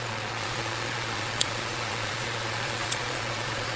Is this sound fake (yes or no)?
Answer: yes